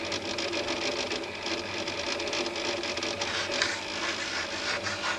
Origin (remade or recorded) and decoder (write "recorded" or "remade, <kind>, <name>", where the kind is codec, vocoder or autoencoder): recorded